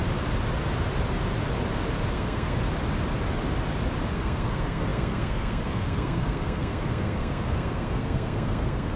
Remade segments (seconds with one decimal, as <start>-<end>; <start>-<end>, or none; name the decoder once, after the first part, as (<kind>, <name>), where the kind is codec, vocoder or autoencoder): 2.1-2.6 (codec, SNAC); 4.1-9.0